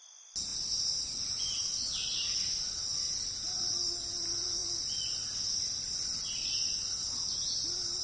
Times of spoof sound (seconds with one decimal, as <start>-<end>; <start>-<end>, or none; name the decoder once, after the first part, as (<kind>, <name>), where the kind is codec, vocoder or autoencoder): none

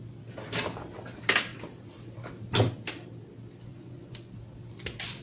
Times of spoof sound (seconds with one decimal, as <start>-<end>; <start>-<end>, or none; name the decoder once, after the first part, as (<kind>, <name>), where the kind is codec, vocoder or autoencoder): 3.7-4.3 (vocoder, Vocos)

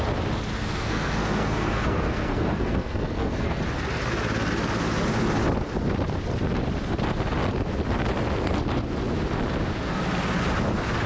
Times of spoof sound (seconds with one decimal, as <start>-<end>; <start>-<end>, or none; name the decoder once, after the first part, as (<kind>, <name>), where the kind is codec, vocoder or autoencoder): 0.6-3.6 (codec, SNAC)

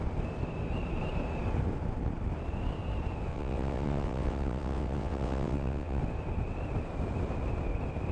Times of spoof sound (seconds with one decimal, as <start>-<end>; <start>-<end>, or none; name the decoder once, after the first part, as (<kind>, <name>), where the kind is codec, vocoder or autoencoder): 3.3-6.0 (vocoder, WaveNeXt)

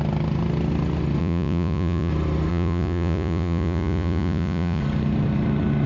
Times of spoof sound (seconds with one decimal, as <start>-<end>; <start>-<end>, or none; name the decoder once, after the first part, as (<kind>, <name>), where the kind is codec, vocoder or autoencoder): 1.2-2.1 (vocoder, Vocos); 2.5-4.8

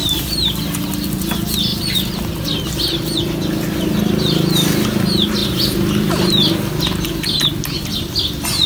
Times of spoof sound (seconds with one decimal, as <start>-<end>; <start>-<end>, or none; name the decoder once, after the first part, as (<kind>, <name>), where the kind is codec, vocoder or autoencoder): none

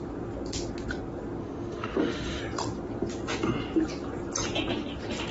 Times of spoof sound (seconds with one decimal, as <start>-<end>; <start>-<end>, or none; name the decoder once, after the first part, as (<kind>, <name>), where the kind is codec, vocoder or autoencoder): 1.4-2.4 (autoencoder, DAC-VAE)